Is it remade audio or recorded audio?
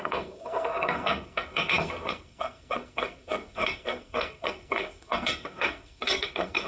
remade